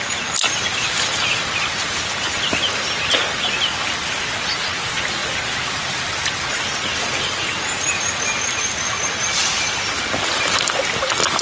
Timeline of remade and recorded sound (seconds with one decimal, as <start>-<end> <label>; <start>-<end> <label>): 0.0-11.4 recorded